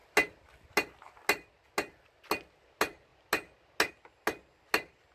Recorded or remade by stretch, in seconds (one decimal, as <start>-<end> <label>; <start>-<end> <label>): 0.0-5.1 recorded